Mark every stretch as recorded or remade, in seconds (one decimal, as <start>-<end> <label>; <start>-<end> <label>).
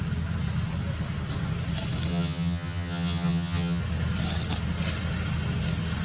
0.0-2.1 recorded; 2.1-3.8 remade; 3.8-6.0 recorded